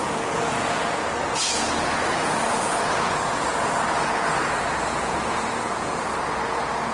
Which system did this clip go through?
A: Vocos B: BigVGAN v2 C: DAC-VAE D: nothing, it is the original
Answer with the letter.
A